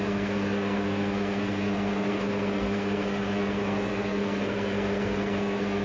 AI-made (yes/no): yes